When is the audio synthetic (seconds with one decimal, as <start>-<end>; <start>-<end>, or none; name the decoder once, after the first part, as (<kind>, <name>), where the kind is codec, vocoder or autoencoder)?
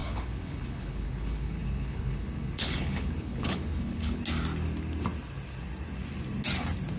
0.0-4.2 (codec, HILCodec)